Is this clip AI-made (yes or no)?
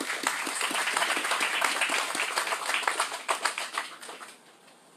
no